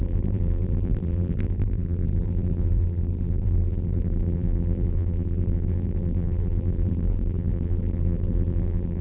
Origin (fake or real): fake